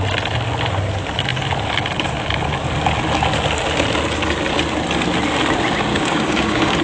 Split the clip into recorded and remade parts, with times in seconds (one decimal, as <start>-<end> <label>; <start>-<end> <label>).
0.0-5.9 recorded; 5.9-6.8 remade

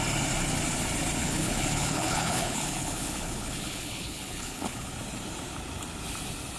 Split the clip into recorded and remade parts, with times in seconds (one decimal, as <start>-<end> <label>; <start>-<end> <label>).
0.0-1.2 recorded; 1.2-4.9 remade; 4.9-6.6 recorded

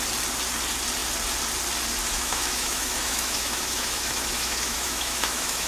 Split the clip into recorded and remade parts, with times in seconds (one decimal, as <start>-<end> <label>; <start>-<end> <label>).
0.0-2.1 recorded; 2.1-5.7 remade

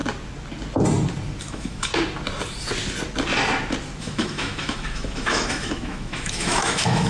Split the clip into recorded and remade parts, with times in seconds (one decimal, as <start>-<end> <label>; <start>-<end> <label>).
0.0-1.4 recorded; 1.4-1.9 remade; 1.9-4.0 recorded; 4.0-7.1 remade

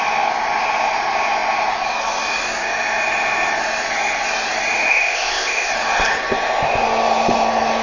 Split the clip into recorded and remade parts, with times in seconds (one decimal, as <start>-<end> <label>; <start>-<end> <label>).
0.0-4.9 recorded; 4.9-5.7 remade; 5.7-7.8 recorded